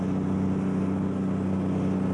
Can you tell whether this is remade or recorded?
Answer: recorded